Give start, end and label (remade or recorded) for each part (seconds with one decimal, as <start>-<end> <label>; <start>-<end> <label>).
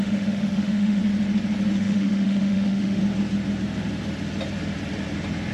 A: 0.0-1.0 remade; 1.0-1.8 recorded; 1.8-3.0 remade; 3.0-5.5 recorded